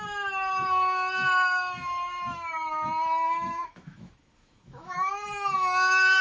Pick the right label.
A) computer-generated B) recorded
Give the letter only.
A